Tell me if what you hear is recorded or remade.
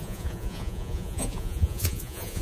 remade